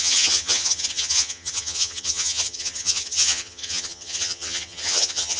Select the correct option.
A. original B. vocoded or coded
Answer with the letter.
B